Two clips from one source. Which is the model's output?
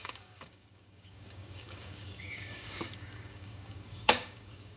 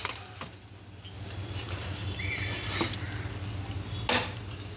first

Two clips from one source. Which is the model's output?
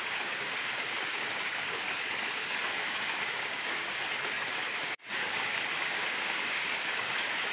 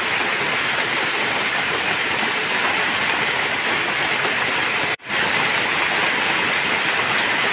first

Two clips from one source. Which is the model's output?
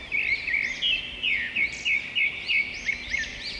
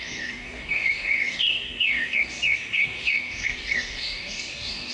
second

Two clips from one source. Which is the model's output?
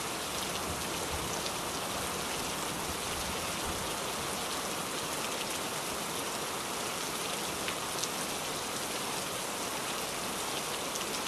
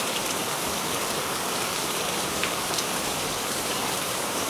second